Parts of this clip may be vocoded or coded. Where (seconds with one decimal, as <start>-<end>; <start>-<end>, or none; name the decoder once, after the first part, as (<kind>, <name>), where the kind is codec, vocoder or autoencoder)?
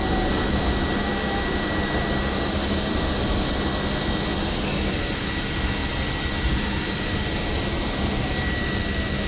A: none